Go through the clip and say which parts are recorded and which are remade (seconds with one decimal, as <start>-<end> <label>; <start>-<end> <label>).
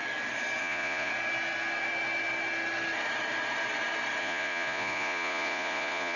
0.0-0.6 recorded; 0.6-1.1 remade; 1.1-4.2 recorded; 4.2-6.2 remade